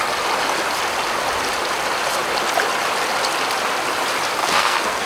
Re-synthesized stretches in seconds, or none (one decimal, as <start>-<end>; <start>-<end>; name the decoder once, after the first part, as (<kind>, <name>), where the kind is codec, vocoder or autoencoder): 4.4-5.1 (codec, SNAC)